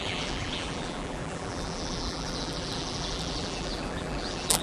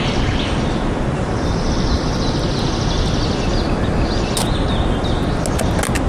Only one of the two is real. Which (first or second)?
second